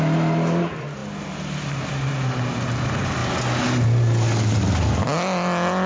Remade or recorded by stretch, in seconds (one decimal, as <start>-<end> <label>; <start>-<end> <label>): 0.0-5.9 recorded